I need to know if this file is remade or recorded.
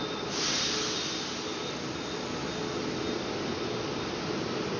recorded